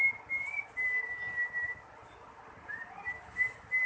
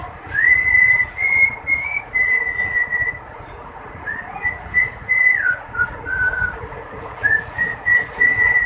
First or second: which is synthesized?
second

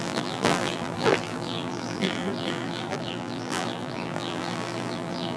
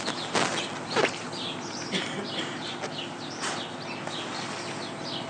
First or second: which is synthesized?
first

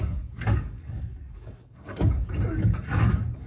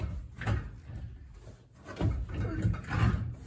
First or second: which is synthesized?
first